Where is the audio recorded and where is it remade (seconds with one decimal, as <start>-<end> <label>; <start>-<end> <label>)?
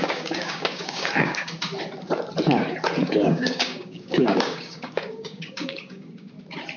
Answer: 0.0-1.5 remade; 1.5-3.0 recorded; 3.0-6.3 remade; 6.3-6.8 recorded